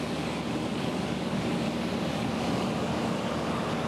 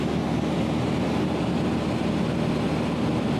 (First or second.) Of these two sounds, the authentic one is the second